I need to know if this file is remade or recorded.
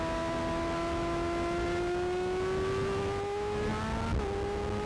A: recorded